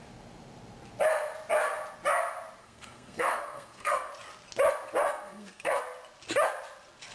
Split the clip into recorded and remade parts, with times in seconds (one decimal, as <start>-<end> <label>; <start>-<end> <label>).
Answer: 0.0-2.6 recorded; 2.6-4.1 remade; 4.1-5.0 recorded; 5.0-5.8 remade; 5.8-7.1 recorded